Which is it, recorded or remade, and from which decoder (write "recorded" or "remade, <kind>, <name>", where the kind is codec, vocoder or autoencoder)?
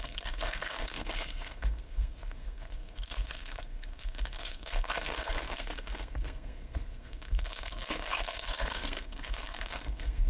remade, codec, SNAC